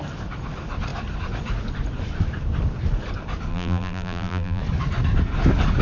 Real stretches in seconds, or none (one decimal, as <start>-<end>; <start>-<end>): 0.0-3.5; 4.6-5.8